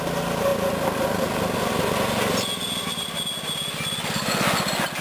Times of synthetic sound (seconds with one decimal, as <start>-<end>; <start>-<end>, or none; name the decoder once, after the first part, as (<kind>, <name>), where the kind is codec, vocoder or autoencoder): none